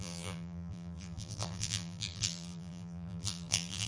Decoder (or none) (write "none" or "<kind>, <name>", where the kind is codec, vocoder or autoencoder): vocoder, BigVGAN v2